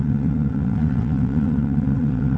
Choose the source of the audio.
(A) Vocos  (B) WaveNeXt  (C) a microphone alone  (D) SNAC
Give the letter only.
B